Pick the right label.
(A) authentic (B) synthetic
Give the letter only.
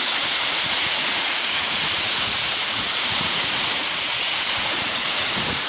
B